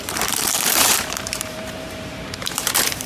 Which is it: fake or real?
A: fake